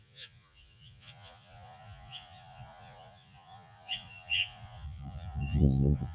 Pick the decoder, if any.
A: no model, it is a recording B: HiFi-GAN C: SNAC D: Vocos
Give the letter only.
D